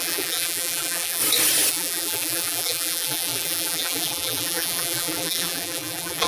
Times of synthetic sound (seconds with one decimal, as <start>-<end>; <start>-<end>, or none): 0.0-1.2; 1.7-6.3